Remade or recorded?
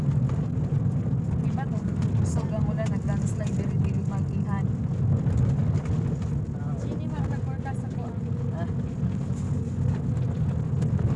recorded